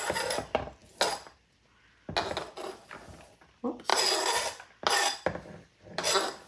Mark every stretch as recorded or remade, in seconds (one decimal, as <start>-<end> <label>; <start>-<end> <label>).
0.0-6.5 recorded